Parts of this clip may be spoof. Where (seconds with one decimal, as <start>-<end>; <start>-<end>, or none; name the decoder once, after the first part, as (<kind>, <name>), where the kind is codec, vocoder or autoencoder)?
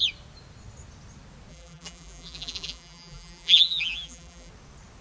1.5-4.5 (vocoder, BigVGAN v2)